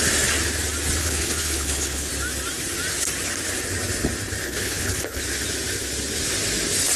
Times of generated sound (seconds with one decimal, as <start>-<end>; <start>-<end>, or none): 1.0-2.1; 4.4-5.2